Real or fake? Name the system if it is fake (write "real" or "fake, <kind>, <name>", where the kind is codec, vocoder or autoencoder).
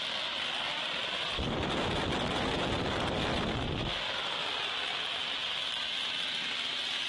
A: real